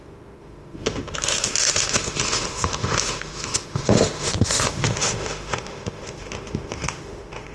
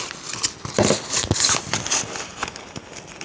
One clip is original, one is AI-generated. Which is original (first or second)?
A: second